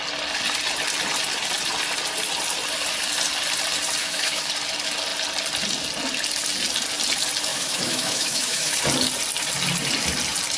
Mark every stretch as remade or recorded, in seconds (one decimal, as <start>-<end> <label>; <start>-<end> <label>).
0.0-4.0 recorded; 4.0-4.5 remade; 4.5-7.5 recorded; 7.5-8.8 remade; 8.8-10.6 recorded